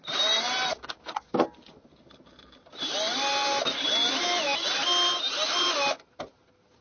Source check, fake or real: real